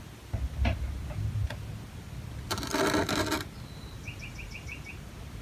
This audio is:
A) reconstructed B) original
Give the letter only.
B